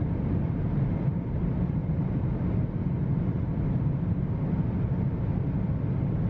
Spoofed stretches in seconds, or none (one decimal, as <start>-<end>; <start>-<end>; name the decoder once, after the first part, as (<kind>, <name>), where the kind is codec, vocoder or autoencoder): none